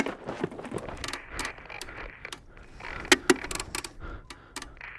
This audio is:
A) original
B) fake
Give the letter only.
A